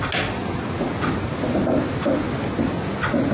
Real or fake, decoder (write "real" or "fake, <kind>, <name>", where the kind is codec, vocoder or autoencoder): real